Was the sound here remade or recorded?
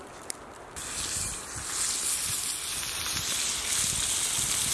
recorded